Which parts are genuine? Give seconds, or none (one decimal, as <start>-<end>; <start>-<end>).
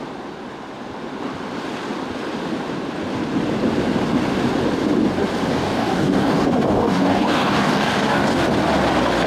0.0-5.5; 8.5-9.3